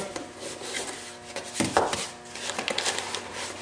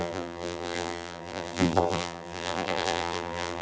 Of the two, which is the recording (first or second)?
first